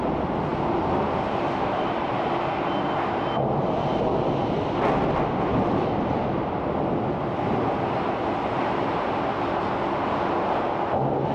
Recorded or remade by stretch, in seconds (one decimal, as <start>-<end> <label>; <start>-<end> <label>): 0.0-11.3 recorded